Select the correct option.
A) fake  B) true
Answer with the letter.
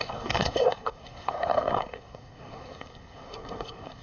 A